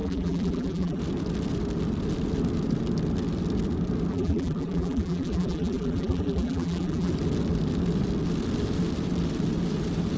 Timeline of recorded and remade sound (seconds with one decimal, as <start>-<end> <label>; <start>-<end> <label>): 0.0-1.0 remade; 1.0-4.1 recorded; 4.1-7.1 remade; 7.1-10.2 recorded